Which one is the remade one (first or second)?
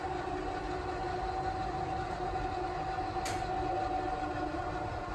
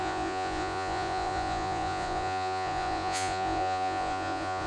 second